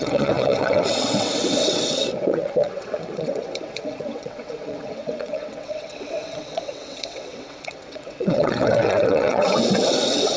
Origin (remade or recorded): remade